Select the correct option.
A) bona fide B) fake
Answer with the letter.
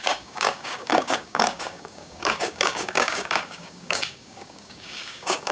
B